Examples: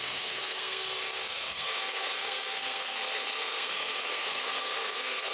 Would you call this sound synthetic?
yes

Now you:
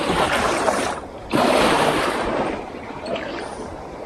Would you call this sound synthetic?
yes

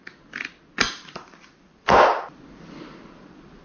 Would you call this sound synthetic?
yes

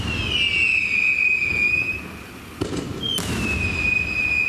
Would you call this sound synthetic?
no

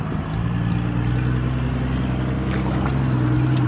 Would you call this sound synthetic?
no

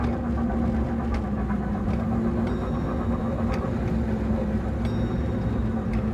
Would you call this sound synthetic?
no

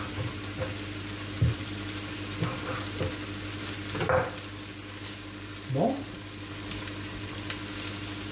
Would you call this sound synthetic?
no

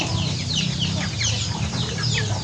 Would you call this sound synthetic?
no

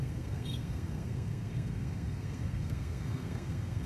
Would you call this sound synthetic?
yes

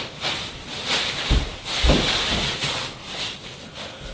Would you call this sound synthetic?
yes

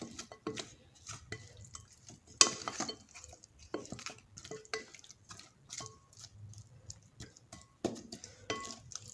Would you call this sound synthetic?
no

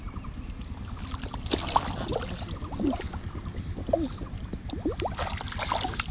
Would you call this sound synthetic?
no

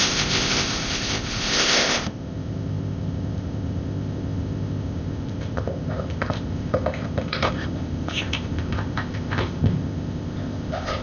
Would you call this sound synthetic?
yes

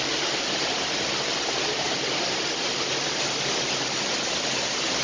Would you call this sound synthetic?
no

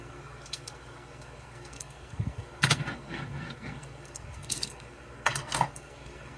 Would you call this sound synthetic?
yes